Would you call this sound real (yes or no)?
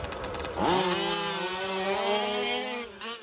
yes